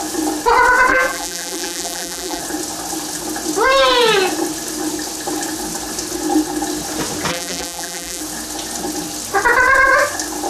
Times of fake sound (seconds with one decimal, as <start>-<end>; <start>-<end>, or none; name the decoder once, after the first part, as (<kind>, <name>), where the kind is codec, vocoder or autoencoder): 0.9-2.4 (vocoder, BigVGAN v2); 7.3-8.2